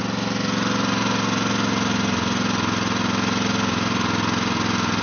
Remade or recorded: recorded